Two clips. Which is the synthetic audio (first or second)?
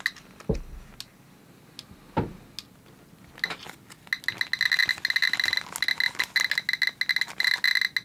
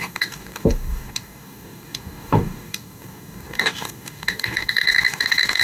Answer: second